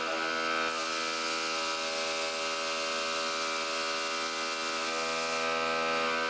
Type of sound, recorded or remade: recorded